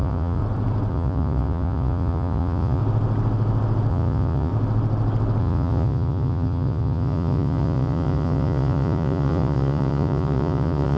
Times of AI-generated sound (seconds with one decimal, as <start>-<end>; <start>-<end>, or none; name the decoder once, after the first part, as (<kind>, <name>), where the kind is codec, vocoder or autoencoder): 0.0-0.4 (vocoder, Vocos); 0.9-2.8; 3.9-4.5; 5.4-11.0